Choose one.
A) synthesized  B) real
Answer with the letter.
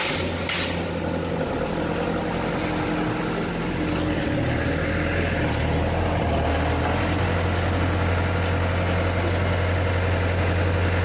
B